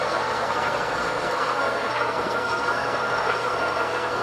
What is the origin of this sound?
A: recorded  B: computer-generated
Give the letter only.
B